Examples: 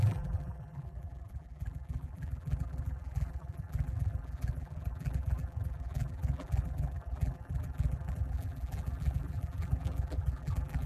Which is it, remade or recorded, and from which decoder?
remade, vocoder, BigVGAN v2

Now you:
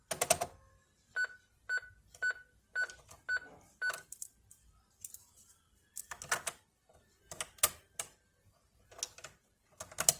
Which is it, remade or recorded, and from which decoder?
recorded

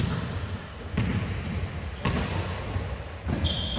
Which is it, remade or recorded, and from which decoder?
recorded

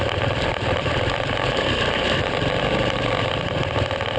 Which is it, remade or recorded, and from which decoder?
remade, vocoder, BigVGAN v2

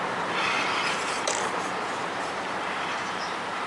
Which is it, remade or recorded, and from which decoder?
remade, vocoder, BigVGAN v2